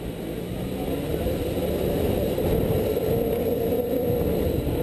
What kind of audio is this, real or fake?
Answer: real